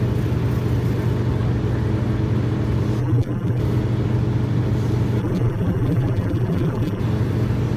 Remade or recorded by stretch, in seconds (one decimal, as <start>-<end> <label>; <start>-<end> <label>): 0.0-3.0 recorded; 3.0-3.6 remade; 3.6-5.2 recorded; 5.2-7.0 remade; 7.0-7.8 recorded